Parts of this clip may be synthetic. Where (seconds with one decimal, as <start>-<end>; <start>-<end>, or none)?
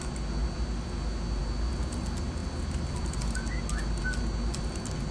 none